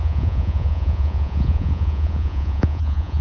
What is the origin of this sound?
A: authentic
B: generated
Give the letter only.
B